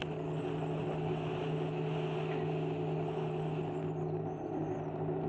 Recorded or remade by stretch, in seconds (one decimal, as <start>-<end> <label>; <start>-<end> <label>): 0.0-5.3 recorded